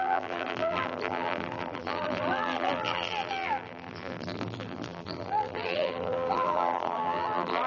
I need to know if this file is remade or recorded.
remade